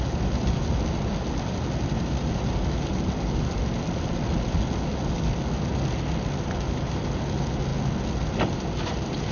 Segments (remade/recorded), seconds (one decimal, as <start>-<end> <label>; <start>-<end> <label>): 0.0-9.3 recorded